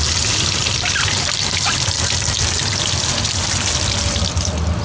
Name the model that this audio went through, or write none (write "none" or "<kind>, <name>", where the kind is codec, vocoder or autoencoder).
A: none